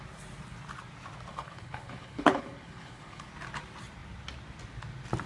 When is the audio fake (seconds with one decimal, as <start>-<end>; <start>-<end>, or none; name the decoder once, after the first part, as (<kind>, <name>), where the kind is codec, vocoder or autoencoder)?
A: 1.3-3.3 (codec, HILCodec)

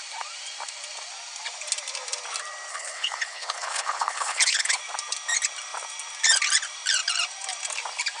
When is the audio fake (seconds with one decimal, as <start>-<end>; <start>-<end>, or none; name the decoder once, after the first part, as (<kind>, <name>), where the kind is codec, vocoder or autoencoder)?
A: 2.7-4.8 (codec, HILCodec)